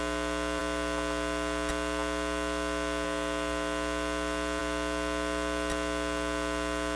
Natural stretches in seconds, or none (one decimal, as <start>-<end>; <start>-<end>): 0.0-7.0